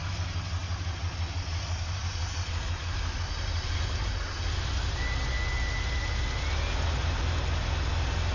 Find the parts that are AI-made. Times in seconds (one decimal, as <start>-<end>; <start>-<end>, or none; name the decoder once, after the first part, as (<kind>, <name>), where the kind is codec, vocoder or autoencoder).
none